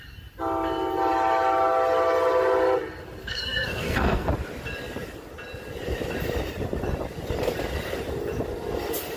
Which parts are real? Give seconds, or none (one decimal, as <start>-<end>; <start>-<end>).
0.0-3.2; 4.3-9.2